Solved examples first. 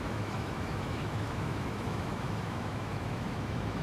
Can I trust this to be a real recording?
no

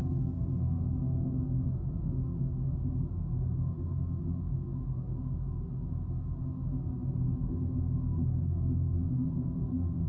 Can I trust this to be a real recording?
no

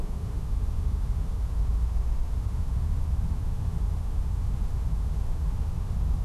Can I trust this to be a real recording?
no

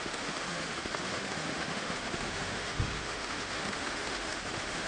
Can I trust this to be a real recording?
no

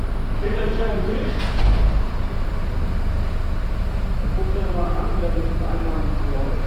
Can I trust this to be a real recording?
yes